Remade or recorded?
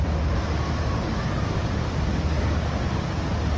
recorded